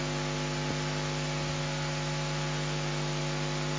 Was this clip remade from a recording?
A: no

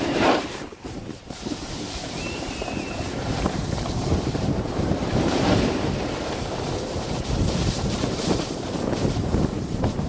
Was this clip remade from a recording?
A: yes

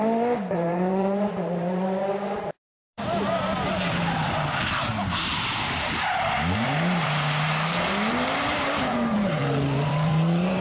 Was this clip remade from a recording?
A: yes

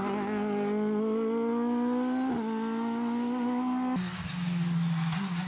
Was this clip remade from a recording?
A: no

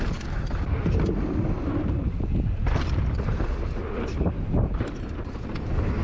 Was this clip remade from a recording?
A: no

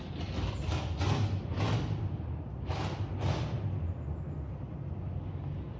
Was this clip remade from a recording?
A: no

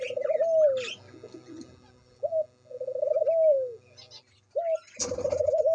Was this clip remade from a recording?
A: no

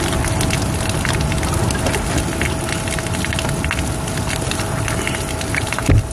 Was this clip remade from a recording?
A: no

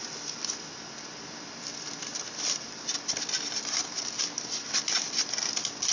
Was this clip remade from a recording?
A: yes